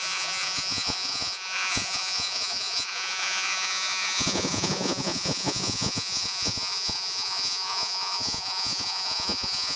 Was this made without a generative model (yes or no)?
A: no